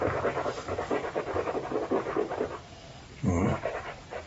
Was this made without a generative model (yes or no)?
yes